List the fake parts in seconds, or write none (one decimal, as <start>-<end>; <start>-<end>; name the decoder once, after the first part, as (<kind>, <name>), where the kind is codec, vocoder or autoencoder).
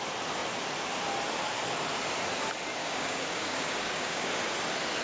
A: 2.7-4.3 (codec, DAC)